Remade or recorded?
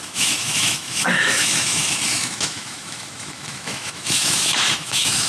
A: remade